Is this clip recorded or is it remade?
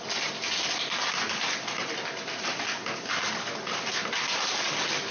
recorded